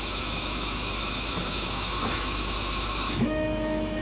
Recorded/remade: remade